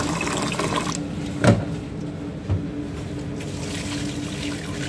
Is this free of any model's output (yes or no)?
yes